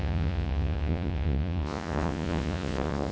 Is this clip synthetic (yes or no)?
yes